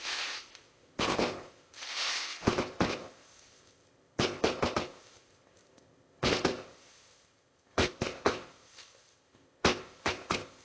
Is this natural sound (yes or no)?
no